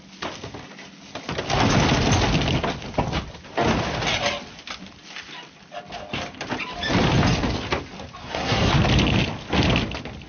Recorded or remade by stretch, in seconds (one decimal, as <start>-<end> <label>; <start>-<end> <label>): 0.0-8.2 recorded; 8.2-8.7 remade; 8.7-10.3 recorded